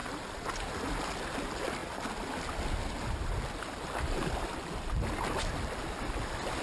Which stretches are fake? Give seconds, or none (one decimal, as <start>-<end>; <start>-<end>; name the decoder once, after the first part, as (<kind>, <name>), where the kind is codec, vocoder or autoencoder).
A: none

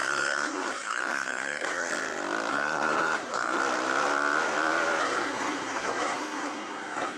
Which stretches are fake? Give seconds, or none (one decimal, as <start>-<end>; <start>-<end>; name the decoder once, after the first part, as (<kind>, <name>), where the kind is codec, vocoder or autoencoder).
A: 0.0-1.9 (codec, SNAC); 2.5-3.6; 5.0-7.2

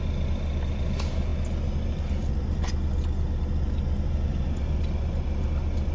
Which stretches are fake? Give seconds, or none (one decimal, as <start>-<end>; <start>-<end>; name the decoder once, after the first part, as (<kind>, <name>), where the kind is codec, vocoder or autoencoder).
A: none

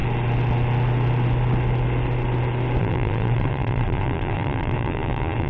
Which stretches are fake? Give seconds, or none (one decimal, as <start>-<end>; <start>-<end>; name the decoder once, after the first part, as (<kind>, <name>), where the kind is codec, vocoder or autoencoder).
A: 2.8-5.5 (vocoder, Vocos)

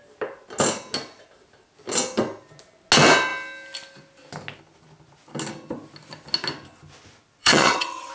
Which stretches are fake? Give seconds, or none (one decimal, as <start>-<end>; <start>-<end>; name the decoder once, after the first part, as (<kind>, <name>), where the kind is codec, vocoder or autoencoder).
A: 7.4-8.1 (vocoder, HiFi-GAN)

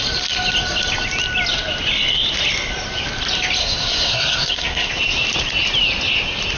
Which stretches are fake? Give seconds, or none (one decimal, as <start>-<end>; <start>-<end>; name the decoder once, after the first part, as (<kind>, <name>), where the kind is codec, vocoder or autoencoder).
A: 3.6-4.9 (codec, SNAC)